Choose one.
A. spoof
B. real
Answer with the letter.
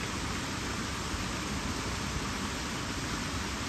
B